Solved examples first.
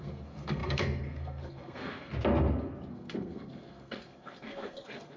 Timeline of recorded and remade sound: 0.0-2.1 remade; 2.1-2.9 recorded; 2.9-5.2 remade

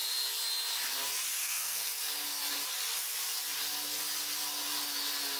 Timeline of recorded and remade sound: 0.0-1.4 recorded; 1.4-1.9 remade; 1.9-5.4 recorded

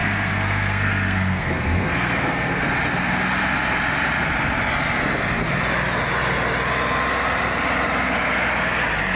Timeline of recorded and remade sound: 0.0-2.6 remade; 2.6-9.2 recorded